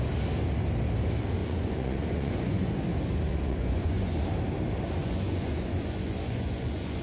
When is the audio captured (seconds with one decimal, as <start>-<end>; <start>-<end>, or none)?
0.0-1.4; 2.7-3.3; 4.1-5.0